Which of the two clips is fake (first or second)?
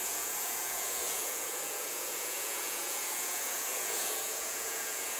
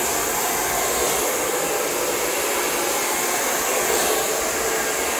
first